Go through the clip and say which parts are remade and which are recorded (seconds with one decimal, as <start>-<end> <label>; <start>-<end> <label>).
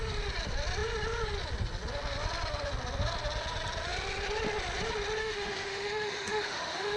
0.0-5.2 recorded; 5.2-7.0 remade